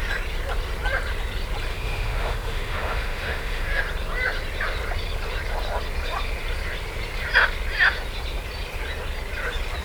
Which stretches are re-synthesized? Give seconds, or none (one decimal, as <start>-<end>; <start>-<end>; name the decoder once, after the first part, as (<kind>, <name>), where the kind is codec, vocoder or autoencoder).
1.7-3.8 (autoencoder, DAC-VAE)